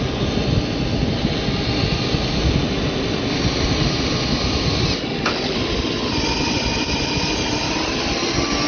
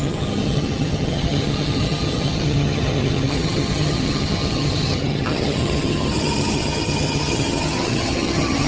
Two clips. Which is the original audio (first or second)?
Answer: first